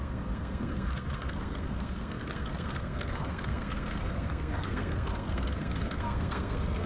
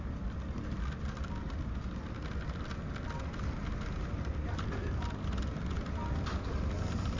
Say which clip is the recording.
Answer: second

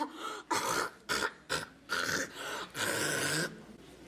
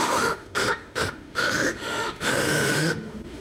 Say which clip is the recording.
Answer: first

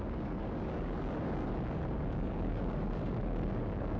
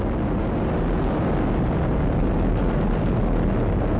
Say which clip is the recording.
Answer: second